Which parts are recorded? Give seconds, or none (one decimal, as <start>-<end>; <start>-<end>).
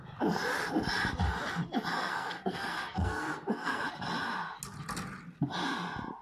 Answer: 0.0-2.0; 3.8-6.2